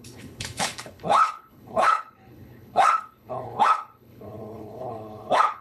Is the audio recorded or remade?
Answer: remade